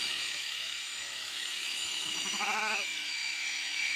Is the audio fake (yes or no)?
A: yes